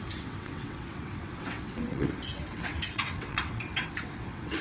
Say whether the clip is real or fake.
fake